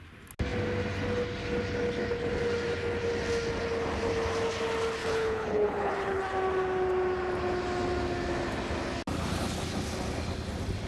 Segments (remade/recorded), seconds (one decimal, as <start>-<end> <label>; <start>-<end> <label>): 0.0-5.0 recorded; 5.0-6.2 remade; 6.2-10.9 recorded